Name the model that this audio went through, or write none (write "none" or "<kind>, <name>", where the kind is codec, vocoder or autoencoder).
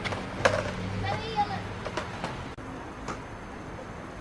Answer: none